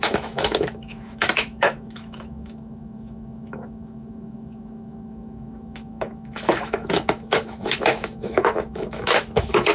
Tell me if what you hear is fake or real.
fake